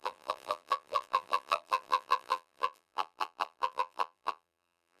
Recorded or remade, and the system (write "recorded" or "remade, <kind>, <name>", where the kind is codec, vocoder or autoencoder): remade, vocoder, BigVGAN v2